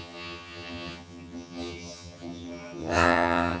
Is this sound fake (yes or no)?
yes